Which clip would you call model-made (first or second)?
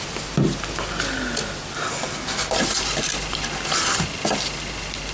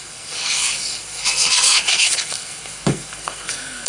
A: second